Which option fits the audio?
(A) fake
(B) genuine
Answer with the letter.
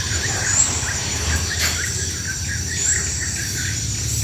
A